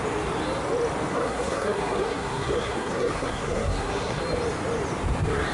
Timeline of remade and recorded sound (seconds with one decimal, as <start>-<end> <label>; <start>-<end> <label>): 0.0-1.1 recorded; 1.1-4.2 remade; 4.2-5.5 recorded